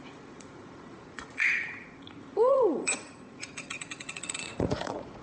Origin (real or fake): fake